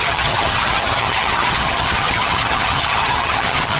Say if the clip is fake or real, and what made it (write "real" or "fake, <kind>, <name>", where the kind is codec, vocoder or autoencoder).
fake, vocoder, HiFi-GAN